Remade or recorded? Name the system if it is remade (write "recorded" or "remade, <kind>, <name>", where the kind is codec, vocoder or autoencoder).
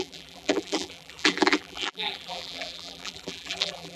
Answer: remade, vocoder, BigVGAN v2